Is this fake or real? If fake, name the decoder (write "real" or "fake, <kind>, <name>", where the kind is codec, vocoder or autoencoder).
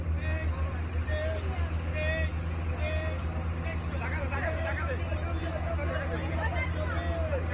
real